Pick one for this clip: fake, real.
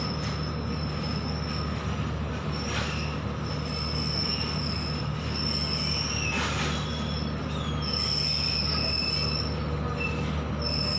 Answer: real